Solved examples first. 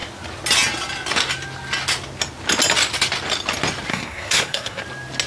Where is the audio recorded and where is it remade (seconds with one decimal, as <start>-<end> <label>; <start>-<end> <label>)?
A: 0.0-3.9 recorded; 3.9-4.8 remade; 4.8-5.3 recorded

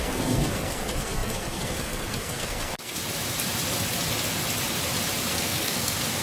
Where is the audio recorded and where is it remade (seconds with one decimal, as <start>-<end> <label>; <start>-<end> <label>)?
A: 0.0-3.0 remade; 3.0-5.3 recorded; 5.3-6.2 remade

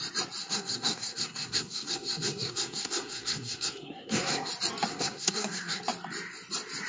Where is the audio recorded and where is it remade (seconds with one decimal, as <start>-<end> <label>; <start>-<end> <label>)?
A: 0.0-0.4 recorded; 0.4-4.5 remade; 4.5-4.9 recorded; 4.9-5.8 remade; 5.8-6.9 recorded

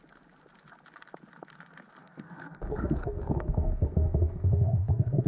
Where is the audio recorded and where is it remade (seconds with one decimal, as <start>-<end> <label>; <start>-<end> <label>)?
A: 0.0-2.0 recorded; 2.0-5.3 remade